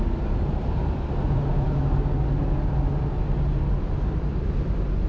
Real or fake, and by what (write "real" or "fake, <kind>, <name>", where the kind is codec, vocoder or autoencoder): real